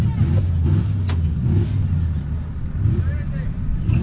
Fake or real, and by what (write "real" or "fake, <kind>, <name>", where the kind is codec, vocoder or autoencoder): real